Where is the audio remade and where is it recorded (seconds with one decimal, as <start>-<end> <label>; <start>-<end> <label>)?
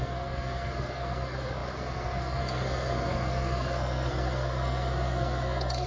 0.0-5.9 remade